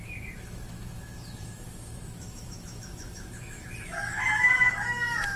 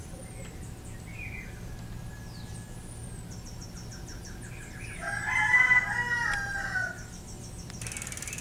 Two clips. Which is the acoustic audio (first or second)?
second